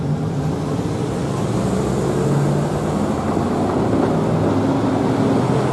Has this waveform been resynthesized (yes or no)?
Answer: no